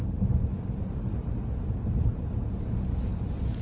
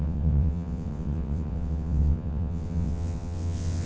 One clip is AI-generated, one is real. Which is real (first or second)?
first